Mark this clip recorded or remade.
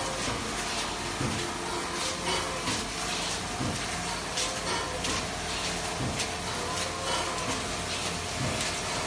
recorded